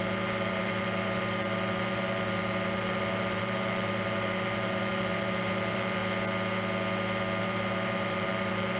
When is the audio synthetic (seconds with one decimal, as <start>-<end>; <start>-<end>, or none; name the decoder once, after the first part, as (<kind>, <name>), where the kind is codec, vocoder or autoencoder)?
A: 0.0-6.0 (vocoder, BigVGAN v2); 7.4-8.8